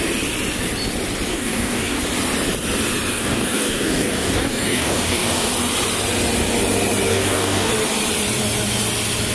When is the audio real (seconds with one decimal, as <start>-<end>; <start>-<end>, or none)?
0.0-1.3; 2.0-3.1; 5.5-7.1; 7.7-9.3